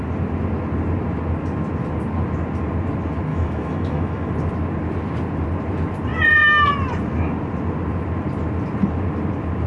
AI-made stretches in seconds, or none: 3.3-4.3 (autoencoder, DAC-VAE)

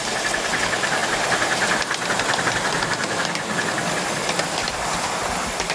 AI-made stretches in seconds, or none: none

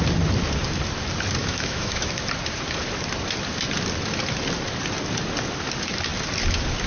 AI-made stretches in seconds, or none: 1.4-2.2 (autoencoder, DAC-VAE)

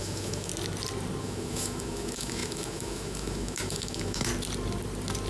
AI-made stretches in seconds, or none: 0.0-0.5 (autoencoder, DAC-VAE); 1.2-4.3

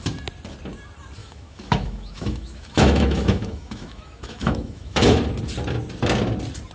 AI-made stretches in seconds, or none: 1.2-5.2 (autoencoder, DAC-VAE)

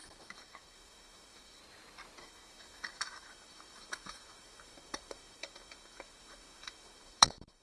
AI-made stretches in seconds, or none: 0.0-1.6 (autoencoder, DAC-VAE); 2.2-7.6

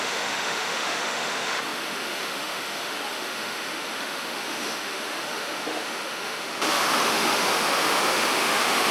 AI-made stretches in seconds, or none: 0.0-8.9 (autoencoder, DAC-VAE)

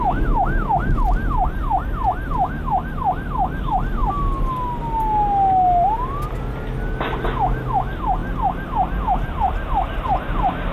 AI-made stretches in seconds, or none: none